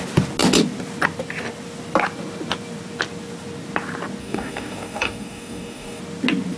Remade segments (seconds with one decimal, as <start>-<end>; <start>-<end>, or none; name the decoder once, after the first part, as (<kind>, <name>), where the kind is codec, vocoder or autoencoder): 4.2-6.0 (codec, DAC)